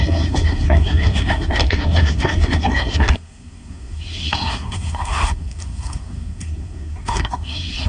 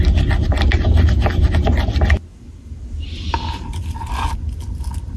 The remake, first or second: first